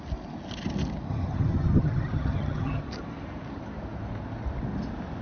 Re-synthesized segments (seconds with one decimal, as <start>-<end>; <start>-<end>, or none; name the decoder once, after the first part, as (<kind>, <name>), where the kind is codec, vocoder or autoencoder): 1.1-2.8 (vocoder, HiFi-GAN)